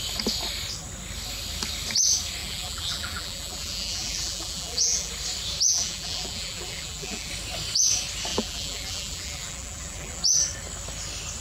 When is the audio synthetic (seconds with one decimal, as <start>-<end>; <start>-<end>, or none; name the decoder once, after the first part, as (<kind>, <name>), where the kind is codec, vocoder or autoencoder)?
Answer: 2.4-5.1 (vocoder, BigVGAN v2); 5.7-7.3; 8.3-10.2